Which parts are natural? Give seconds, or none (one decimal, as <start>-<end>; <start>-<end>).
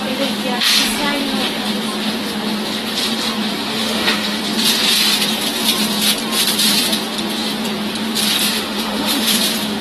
0.0-3.7; 4.4-8.4; 9.4-9.8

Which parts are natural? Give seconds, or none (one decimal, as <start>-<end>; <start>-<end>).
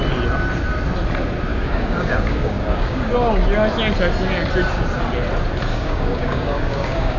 0.0-1.5; 3.1-5.7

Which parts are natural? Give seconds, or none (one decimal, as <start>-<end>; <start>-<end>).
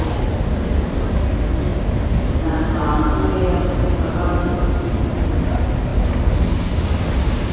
0.0-7.5